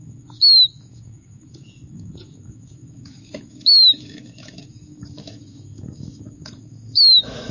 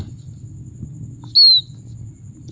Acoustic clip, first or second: second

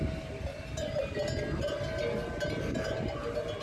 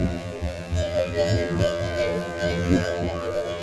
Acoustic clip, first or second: first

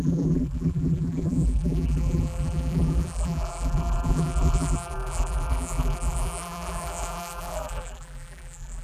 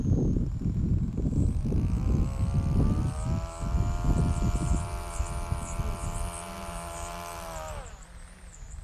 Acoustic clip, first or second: second